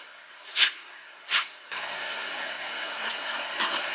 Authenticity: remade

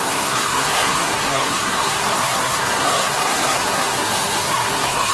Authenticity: remade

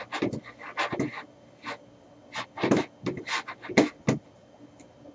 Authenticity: recorded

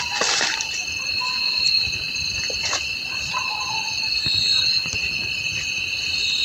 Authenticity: recorded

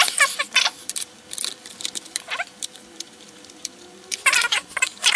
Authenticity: remade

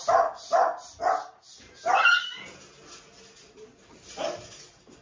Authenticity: recorded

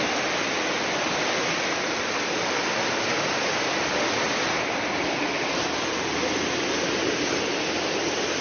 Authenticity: recorded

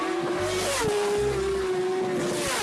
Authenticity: recorded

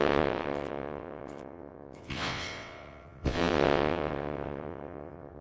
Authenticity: remade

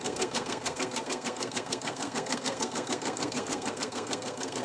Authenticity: remade